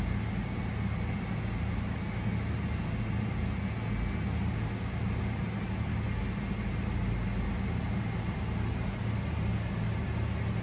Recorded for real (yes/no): yes